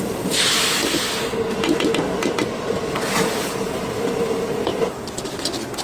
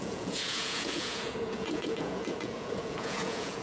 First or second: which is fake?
second